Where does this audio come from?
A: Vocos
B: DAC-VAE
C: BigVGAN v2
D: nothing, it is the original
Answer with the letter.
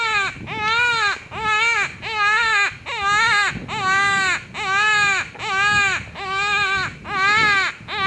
D